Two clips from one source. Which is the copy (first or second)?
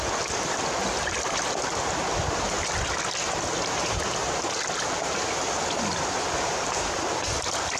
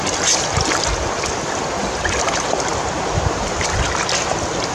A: second